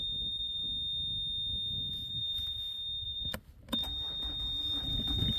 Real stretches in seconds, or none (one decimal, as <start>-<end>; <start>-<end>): 0.6-1.9; 3.3-4.6